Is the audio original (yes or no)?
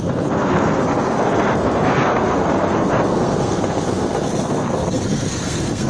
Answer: no